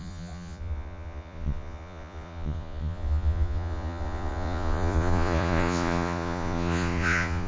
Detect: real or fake fake